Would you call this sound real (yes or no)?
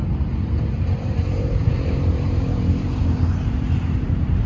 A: no